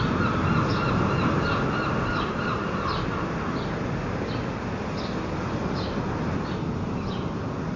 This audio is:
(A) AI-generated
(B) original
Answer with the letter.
B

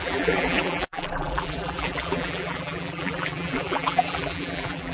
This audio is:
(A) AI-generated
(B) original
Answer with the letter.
A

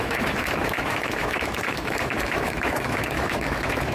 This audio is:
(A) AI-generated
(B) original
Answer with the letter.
A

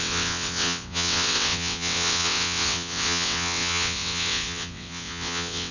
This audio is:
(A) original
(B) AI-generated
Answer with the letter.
B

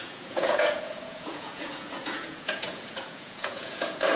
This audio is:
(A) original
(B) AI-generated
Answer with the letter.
B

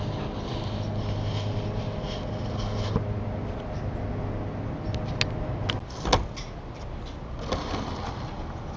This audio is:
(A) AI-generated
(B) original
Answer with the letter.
B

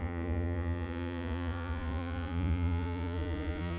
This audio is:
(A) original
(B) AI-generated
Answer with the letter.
B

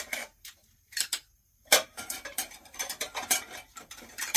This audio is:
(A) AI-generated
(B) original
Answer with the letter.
A